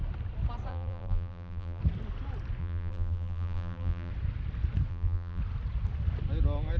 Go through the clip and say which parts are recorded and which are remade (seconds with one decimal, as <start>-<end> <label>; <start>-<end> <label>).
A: 0.0-0.7 recorded; 0.7-1.8 remade; 1.8-2.6 recorded; 2.6-4.1 remade; 4.1-4.9 recorded; 4.9-5.4 remade; 5.4-6.8 recorded